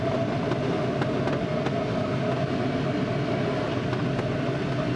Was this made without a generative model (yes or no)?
yes